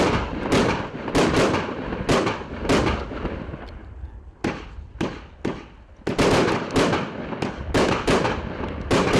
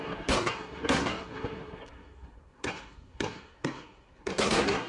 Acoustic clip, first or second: first